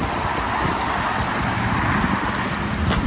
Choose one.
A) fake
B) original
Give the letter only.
B